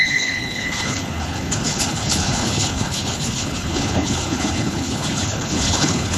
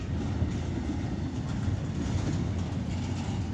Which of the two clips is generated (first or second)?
first